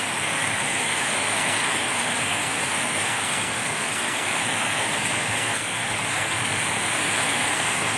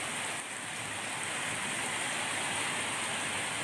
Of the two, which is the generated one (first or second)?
first